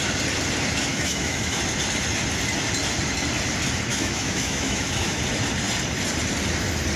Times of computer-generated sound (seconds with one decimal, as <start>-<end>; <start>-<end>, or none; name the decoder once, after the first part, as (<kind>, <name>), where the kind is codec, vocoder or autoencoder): 0.9-1.6 (autoencoder, DAC-VAE); 3.9-5.2